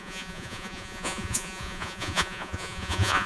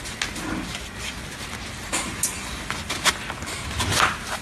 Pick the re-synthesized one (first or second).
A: first